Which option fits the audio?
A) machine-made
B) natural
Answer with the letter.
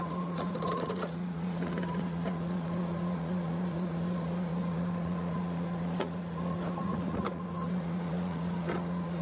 A